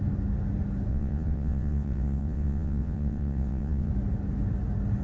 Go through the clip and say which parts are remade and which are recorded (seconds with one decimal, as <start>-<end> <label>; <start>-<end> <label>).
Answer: 0.0-0.9 recorded; 0.9-3.9 remade; 3.9-5.0 recorded